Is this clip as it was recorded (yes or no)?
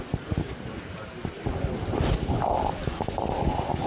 yes